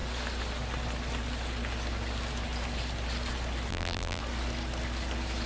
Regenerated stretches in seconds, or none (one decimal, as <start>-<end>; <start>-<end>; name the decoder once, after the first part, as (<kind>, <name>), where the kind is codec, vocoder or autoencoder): 3.7-4.2 (vocoder, BigVGAN v2)